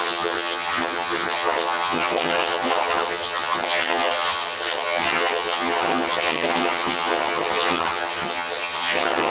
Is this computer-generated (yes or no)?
yes